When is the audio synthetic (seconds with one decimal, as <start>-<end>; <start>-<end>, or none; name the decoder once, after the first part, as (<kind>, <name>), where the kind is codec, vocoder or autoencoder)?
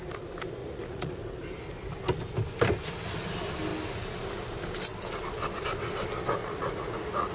0.6-1.2 (vocoder, Vocos); 6.4-7.3